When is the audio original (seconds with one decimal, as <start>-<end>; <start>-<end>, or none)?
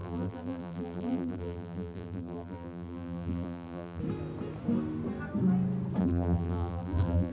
4.0-6.0